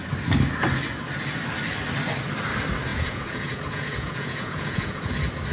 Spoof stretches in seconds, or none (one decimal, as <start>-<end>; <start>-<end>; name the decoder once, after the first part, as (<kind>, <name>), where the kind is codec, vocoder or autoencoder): 2.9-5.1 (vocoder, Vocos)